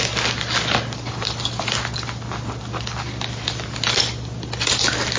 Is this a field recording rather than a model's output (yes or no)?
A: yes